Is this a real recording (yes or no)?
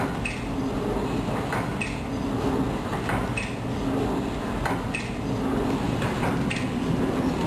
yes